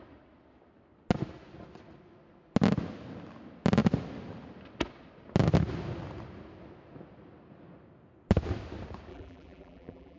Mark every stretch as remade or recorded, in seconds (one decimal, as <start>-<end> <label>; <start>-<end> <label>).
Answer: 0.0-9.1 recorded; 9.1-10.2 remade